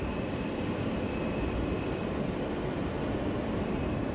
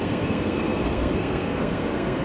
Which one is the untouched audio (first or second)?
first